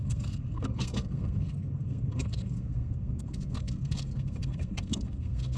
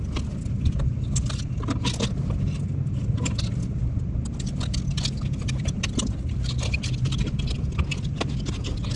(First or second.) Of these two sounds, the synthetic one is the first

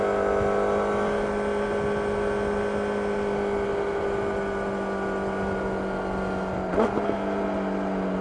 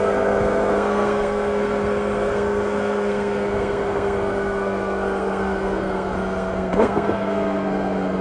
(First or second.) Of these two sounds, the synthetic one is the second